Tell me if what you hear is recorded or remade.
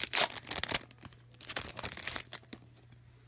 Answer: recorded